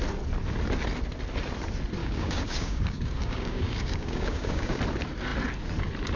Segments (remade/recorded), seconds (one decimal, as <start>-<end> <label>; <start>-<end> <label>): 0.0-2.0 recorded; 2.0-4.8 remade; 4.8-6.2 recorded